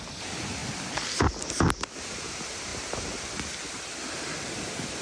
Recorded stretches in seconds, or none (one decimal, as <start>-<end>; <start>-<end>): 0.0-5.0